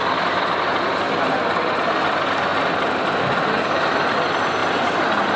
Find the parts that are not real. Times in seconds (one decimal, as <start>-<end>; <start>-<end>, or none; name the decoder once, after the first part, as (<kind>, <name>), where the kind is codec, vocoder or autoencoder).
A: none